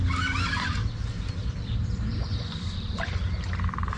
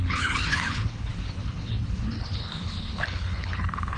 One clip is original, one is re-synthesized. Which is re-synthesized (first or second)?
second